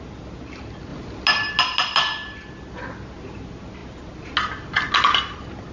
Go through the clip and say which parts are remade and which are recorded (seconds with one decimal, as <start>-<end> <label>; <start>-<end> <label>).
0.0-5.7 recorded